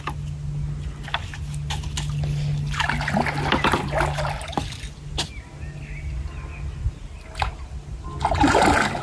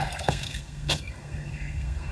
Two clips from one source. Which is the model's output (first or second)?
second